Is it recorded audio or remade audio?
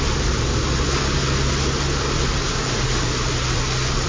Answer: recorded